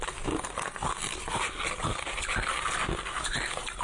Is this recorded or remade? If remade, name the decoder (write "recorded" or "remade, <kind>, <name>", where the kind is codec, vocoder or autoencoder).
recorded